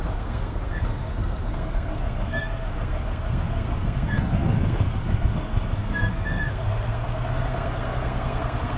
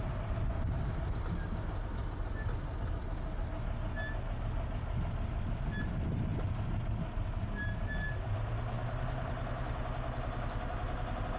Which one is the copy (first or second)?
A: first